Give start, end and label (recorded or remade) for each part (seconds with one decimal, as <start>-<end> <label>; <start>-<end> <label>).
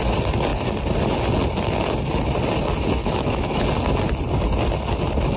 0.0-3.0 recorded; 3.0-3.6 remade; 3.6-5.4 recorded